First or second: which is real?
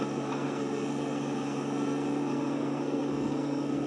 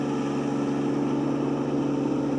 second